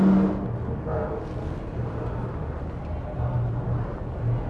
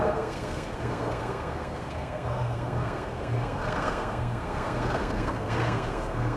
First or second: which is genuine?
first